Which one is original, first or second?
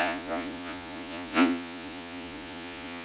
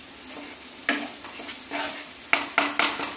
second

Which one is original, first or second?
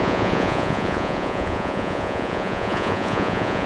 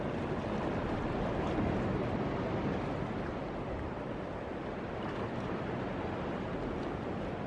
second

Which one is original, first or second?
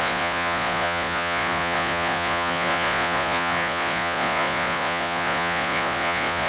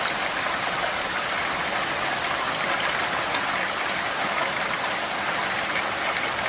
second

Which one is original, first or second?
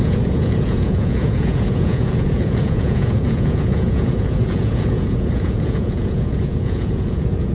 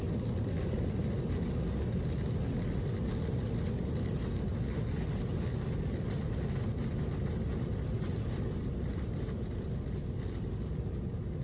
second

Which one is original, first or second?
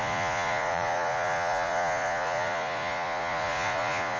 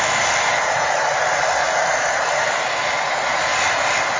second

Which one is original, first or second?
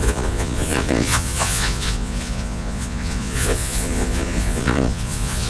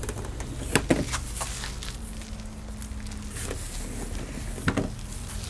second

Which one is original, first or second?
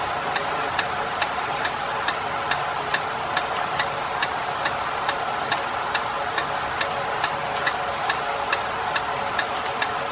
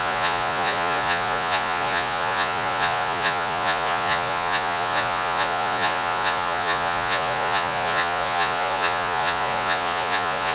first